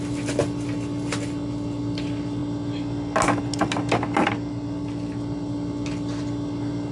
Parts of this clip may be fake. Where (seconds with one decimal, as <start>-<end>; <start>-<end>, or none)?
none